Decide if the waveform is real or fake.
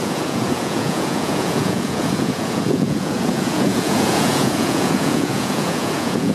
fake